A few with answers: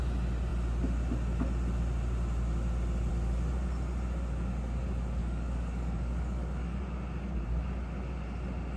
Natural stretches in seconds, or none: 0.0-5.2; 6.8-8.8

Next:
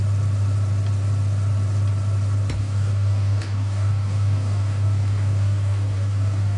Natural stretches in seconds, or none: 0.0-2.6

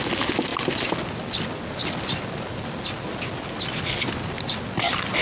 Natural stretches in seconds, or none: 0.0-5.2